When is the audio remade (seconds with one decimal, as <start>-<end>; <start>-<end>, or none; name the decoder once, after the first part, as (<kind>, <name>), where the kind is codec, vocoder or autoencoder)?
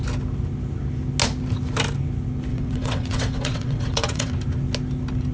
2.5-4.3 (vocoder, WaveNeXt)